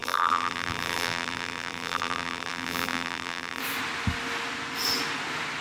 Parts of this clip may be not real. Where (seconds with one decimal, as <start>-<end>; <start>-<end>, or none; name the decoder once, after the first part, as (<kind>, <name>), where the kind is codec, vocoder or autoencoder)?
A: 0.0-3.6 (vocoder, BigVGAN v2)

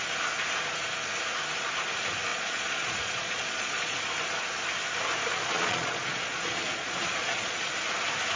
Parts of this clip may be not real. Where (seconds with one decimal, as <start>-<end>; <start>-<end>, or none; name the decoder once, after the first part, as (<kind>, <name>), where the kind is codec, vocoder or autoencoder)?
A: 2.3-4.0 (vocoder, Vocos); 5.3-7.7

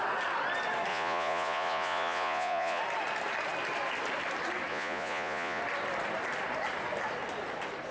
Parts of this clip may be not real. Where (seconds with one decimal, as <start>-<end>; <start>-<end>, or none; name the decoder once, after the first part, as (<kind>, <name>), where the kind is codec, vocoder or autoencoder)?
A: 0.9-2.8 (vocoder, Vocos); 4.7-5.6

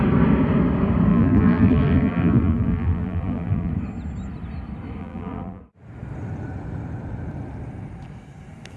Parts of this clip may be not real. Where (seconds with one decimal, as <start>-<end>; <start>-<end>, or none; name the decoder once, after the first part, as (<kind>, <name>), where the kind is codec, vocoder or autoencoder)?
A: 1.1-3.7 (vocoder, BigVGAN v2); 5.0-5.6

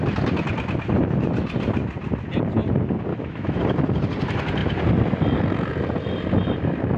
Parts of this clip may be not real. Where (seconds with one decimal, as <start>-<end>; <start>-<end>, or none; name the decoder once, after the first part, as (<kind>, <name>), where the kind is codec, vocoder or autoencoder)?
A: 3.1-3.6 (autoencoder, DAC-VAE)

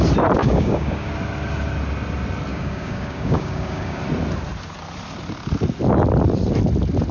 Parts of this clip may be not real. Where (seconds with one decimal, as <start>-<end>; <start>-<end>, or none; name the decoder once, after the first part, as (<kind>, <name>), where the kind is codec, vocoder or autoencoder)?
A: 0.4-1.1 (codec, DAC); 2.5-4.0

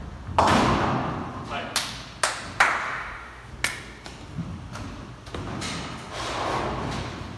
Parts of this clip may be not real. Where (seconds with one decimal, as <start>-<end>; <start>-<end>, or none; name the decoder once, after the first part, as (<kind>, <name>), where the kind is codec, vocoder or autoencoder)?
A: 2.8-3.5 (autoencoder, DAC-VAE)